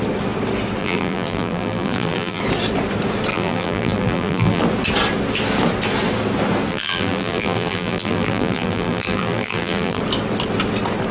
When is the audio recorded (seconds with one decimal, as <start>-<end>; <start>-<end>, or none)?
0.0-0.8; 2.4-3.3; 4.6-6.7; 10.0-11.1

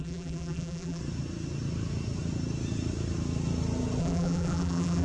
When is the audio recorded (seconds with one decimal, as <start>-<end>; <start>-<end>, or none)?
1.0-4.0

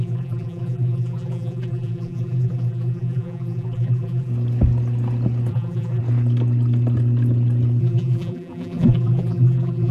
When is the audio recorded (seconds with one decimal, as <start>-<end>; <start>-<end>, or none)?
4.3-5.5; 6.0-7.8

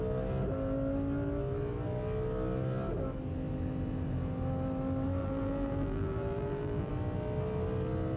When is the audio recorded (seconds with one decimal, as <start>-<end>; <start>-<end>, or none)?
0.0-5.2; 6.9-8.2

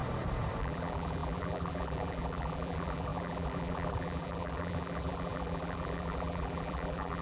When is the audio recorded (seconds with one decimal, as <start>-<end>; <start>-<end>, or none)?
0.0-0.6

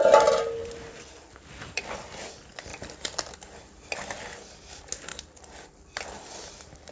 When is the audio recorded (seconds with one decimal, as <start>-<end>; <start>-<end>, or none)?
0.0-0.6; 1.9-2.7; 3.3-5.1

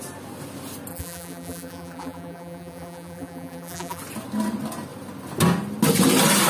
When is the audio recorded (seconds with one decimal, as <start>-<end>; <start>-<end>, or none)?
0.0-0.9; 4.0-6.5

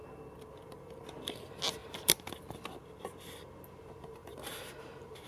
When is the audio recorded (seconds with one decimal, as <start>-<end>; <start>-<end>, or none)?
0.0-1.8; 2.3-4.2; 4.7-5.3